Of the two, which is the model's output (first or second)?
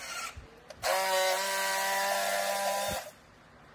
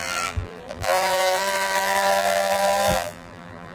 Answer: second